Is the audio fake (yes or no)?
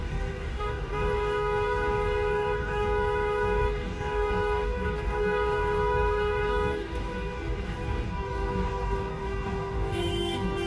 yes